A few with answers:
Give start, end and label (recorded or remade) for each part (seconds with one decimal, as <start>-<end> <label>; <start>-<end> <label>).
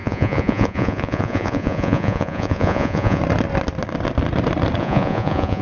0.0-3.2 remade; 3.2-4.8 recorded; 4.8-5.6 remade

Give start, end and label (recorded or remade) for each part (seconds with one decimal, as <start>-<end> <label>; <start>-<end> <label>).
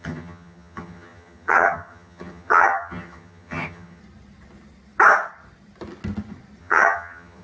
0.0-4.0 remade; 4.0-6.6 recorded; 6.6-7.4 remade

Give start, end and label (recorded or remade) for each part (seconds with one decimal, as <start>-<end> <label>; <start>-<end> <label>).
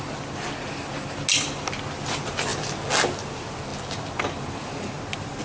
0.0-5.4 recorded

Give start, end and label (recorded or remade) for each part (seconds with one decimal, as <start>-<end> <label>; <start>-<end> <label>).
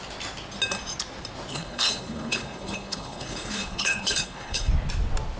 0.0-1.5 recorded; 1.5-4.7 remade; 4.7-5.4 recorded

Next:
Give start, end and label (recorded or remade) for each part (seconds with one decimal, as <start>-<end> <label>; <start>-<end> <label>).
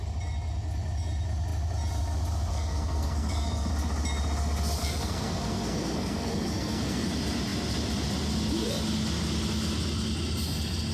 0.0-2.5 recorded; 2.5-3.7 remade; 3.7-4.8 recorded; 4.8-7.1 remade; 7.1-10.9 recorded